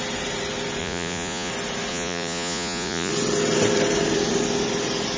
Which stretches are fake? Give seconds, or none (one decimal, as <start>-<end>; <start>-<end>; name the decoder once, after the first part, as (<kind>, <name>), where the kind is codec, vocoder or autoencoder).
0.8-1.5 (vocoder, Vocos); 1.9-3.1